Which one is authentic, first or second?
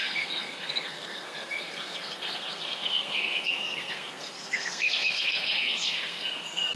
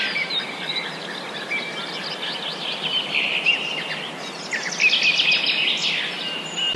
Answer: second